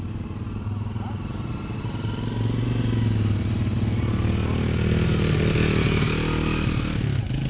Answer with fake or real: real